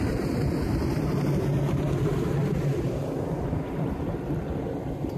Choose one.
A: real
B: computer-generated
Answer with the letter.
A